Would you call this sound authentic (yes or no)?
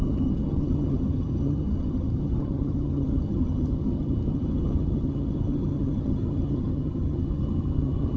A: no